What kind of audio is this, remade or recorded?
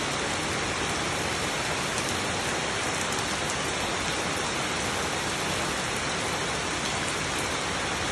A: recorded